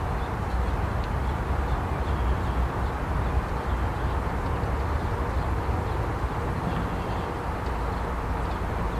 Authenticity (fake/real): real